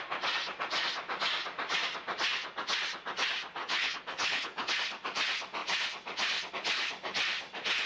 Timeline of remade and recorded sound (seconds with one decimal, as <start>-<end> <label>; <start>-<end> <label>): 0.0-3.6 recorded; 3.6-4.7 remade; 4.7-7.9 recorded